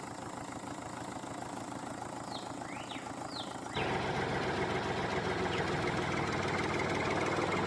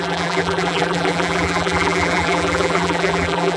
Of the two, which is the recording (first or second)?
first